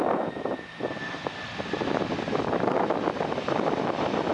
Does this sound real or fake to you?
real